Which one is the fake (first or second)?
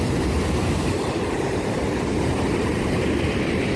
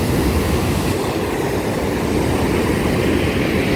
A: first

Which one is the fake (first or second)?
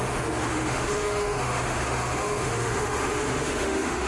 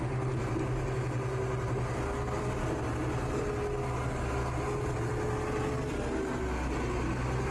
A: first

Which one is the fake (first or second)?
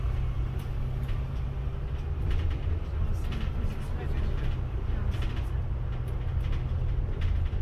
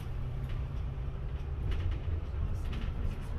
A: second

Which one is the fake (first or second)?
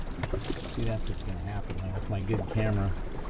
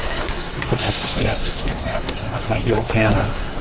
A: second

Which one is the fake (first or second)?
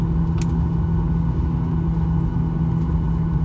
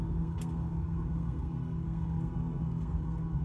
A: second